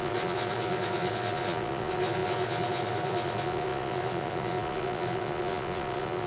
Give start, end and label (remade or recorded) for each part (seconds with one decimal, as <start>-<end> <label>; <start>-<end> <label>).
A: 0.0-6.3 remade

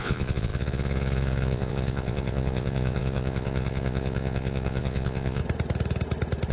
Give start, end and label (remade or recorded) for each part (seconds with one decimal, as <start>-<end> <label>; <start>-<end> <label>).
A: 0.0-5.4 remade; 5.4-6.5 recorded